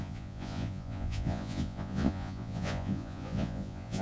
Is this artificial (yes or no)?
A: yes